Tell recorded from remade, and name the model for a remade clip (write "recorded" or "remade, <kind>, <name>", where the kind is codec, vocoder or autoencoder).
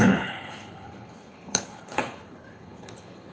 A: remade, codec, HILCodec